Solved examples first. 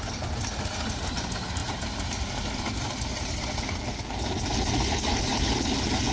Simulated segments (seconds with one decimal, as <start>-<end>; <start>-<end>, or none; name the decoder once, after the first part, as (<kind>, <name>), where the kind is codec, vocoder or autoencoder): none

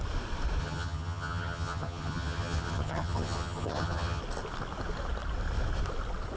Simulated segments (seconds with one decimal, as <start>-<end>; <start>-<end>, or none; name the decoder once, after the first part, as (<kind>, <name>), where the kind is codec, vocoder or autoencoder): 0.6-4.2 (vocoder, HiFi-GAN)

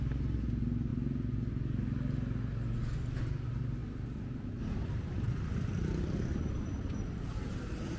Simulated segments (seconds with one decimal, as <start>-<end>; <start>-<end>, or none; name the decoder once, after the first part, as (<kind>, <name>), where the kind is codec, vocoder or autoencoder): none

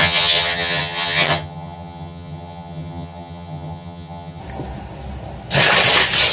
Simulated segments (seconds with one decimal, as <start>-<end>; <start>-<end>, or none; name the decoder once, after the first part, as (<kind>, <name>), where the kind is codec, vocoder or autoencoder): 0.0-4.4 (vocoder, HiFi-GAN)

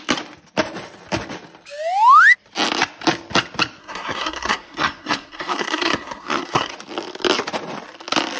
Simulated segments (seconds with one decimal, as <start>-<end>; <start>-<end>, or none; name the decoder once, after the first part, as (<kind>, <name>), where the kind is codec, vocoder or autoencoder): 3.8-6.7 (codec, SNAC)